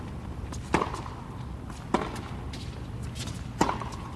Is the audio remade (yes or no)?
no